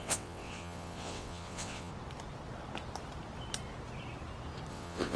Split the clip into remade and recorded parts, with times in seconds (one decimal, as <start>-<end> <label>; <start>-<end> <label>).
0.0-1.9 remade; 1.9-4.7 recorded; 4.7-5.2 remade